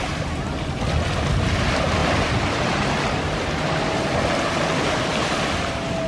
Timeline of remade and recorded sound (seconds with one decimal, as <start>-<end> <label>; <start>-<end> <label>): 0.0-6.1 recorded

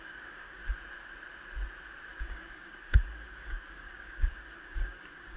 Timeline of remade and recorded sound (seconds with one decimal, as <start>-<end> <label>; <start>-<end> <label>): 0.0-0.6 remade; 0.6-2.2 recorded; 2.2-5.4 remade

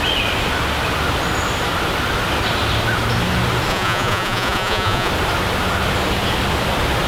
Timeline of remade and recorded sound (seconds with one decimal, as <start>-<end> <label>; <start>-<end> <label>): 0.0-3.7 recorded; 3.7-5.1 remade; 5.1-7.1 recorded

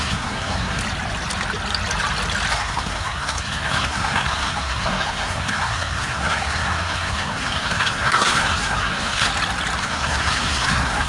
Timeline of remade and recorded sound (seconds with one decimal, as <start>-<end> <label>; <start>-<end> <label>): 0.0-0.8 remade; 0.8-2.5 recorded; 2.5-9.3 remade; 9.3-9.8 recorded; 9.8-11.1 remade

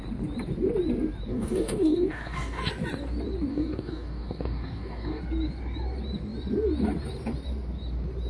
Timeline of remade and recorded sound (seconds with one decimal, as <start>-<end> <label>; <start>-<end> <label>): 0.0-1.3 recorded; 1.3-2.6 remade; 2.6-3.5 recorded; 3.5-5.2 remade; 5.2-8.3 recorded

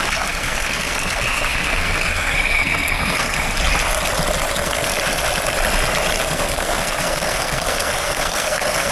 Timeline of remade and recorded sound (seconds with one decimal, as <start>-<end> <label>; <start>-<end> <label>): 0.0-3.5 remade; 3.5-4.5 recorded; 4.5-4.9 remade; 4.9-6.2 recorded; 6.2-8.9 remade

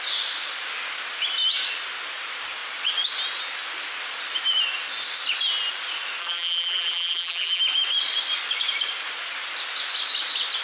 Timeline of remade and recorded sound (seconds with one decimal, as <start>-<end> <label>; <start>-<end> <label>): 0.0-6.2 recorded; 6.2-7.6 remade; 7.6-10.6 recorded

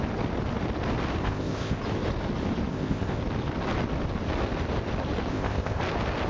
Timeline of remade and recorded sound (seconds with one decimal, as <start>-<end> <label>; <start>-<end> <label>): 0.0-1.2 recorded; 1.2-1.8 remade; 1.8-2.7 recorded; 2.7-3.2 remade; 3.2-5.3 recorded; 5.3-5.8 remade; 5.8-6.3 recorded